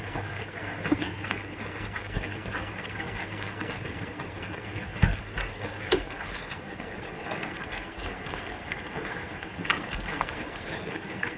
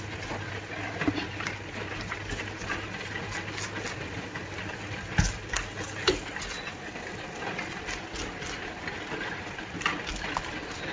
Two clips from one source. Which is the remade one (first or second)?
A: first